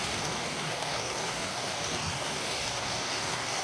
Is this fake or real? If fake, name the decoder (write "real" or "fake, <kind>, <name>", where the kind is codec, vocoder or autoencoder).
fake, codec, DAC